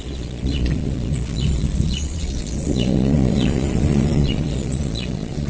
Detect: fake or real fake